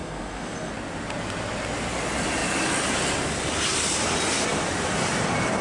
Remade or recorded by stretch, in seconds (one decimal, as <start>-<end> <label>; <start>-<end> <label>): 0.0-0.7 remade; 0.7-5.6 recorded